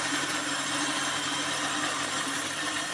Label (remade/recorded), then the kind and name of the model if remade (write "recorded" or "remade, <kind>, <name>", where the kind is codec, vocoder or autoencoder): remade, vocoder, BigVGAN v2